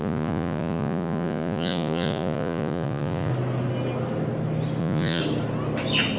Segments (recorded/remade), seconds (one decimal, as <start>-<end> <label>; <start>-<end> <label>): 0.0-3.3 remade; 3.3-4.8 recorded; 4.8-5.2 remade; 5.2-6.2 recorded